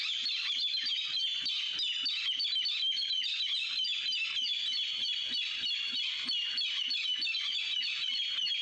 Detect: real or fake real